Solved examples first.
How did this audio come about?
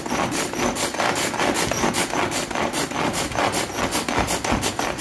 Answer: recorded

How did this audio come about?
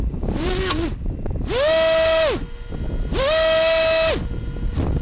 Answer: recorded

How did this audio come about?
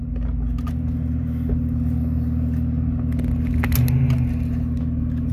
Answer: recorded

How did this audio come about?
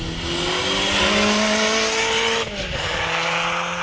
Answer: recorded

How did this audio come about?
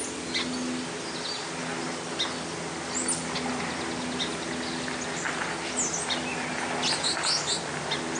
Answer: recorded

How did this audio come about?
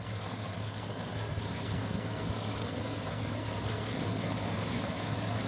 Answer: remade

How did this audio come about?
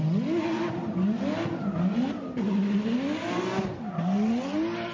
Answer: recorded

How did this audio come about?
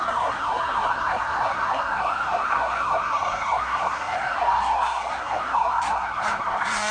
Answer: remade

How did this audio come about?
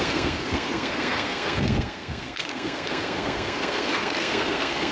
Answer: remade